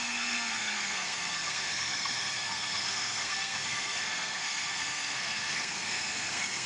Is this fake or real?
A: fake